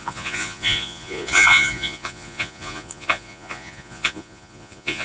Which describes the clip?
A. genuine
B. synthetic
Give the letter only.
B